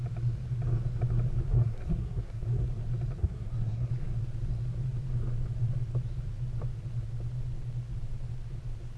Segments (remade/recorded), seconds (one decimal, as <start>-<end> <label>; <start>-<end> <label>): 0.0-1.5 recorded; 1.5-2.7 remade; 2.7-3.2 recorded; 3.2-3.9 remade; 3.9-9.0 recorded